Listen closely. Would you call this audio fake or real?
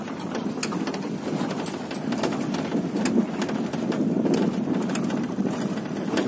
real